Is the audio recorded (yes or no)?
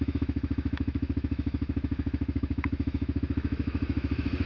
no